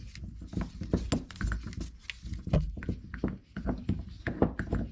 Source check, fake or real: real